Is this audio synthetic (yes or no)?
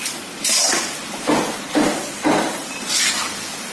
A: no